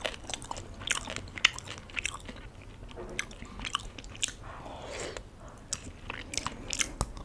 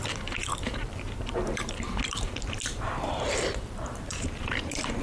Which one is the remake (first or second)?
second